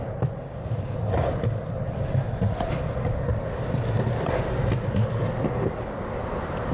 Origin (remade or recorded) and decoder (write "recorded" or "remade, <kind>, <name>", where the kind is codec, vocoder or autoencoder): recorded